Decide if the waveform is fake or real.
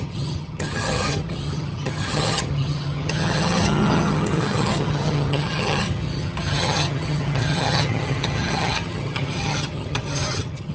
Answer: fake